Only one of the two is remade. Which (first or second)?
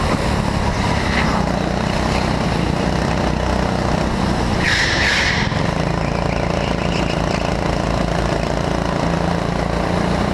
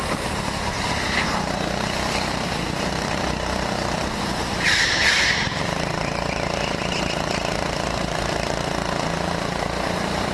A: second